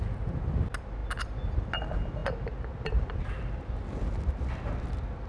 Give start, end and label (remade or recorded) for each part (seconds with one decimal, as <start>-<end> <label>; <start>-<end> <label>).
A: 0.0-5.3 recorded